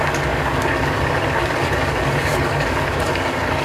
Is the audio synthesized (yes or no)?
yes